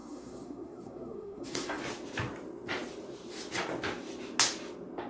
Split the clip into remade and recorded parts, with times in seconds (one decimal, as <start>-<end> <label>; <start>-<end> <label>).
0.0-1.8 remade; 1.8-5.1 recorded